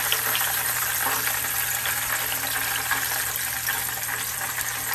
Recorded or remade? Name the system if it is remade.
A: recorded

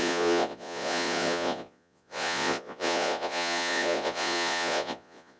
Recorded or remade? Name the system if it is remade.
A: remade, vocoder, Vocos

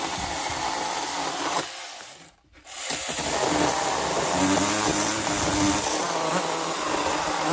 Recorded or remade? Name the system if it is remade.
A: recorded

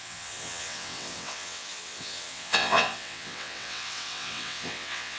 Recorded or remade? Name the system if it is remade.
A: remade, vocoder, WaveNeXt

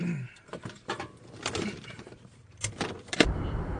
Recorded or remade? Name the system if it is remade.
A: remade, vocoder, BigVGAN v2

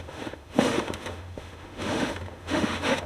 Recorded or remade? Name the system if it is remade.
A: remade, autoencoder, DAC-VAE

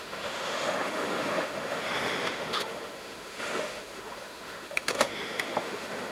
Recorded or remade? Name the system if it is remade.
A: remade, autoencoder, DAC-VAE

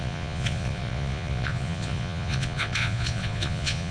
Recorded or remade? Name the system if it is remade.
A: remade, vocoder, Vocos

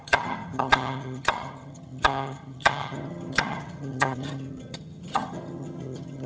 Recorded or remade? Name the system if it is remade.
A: remade, vocoder, HiFi-GAN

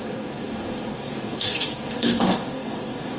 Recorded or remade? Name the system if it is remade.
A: remade, codec, DAC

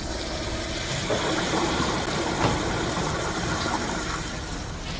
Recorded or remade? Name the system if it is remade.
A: recorded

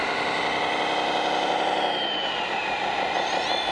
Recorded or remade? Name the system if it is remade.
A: recorded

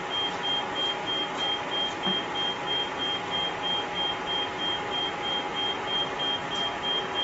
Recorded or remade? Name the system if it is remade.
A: recorded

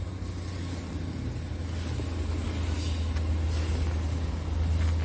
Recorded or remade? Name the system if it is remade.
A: recorded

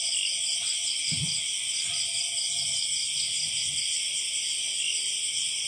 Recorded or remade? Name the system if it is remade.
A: recorded